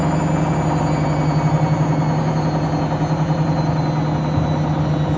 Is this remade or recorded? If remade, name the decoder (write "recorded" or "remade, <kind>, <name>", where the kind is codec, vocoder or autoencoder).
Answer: recorded